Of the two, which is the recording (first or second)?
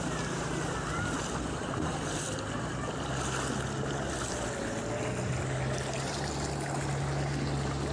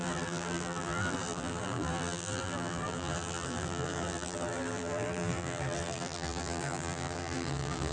first